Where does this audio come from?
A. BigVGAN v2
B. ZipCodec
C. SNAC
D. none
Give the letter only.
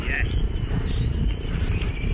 D